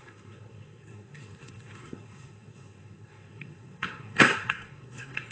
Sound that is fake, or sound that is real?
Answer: fake